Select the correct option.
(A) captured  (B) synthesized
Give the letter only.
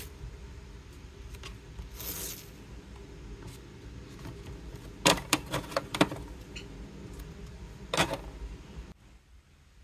A